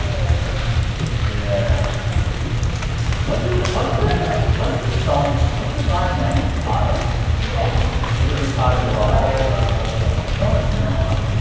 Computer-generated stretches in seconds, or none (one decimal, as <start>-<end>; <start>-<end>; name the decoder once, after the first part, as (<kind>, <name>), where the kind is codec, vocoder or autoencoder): none